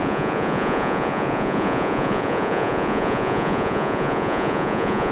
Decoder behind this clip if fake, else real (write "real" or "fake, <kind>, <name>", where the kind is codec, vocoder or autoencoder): fake, vocoder, Vocos